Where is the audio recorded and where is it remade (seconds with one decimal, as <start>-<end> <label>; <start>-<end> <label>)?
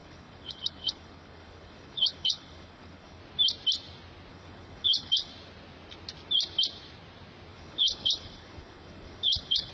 0.0-3.2 remade; 3.2-4.3 recorded; 4.3-5.3 remade; 5.3-7.5 recorded; 7.5-9.7 remade